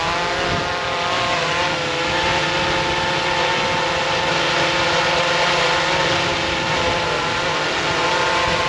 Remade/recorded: recorded